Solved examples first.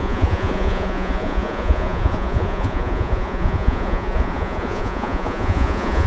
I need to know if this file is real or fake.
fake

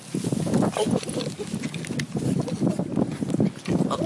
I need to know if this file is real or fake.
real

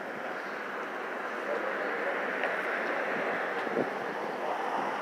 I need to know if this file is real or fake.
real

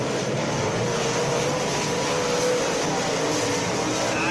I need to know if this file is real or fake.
real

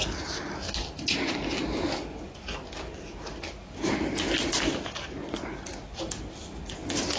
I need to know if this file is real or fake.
real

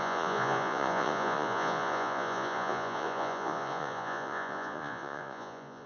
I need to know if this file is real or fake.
fake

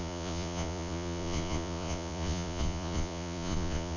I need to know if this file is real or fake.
fake